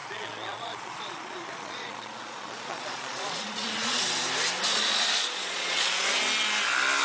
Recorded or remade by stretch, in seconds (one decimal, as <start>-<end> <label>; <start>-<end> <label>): 0.0-4.0 remade; 4.0-4.7 recorded; 4.7-6.2 remade; 6.2-7.0 recorded